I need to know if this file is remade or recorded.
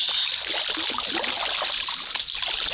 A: recorded